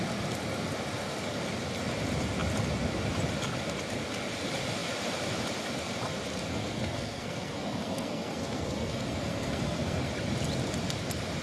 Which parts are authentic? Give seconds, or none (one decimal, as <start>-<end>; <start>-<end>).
0.0-6.5; 10.1-11.4